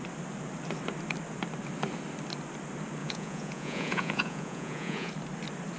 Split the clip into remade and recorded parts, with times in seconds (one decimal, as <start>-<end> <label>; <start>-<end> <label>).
0.0-3.0 recorded; 3.0-5.1 remade; 5.1-5.8 recorded